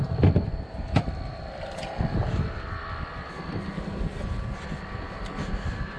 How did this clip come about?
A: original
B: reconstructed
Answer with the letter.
A